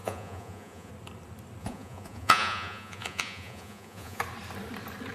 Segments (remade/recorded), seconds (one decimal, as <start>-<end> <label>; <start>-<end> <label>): 0.0-0.9 remade; 0.9-1.6 recorded; 1.6-4.2 remade; 4.2-5.1 recorded